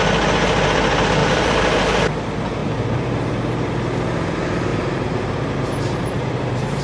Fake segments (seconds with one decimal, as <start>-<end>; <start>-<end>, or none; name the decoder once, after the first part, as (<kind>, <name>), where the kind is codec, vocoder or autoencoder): 1.2-1.8 (vocoder, BigVGAN v2); 2.6-3.4; 4.7-6.8